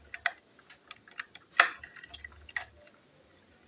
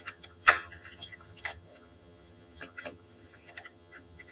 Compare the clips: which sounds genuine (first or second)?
first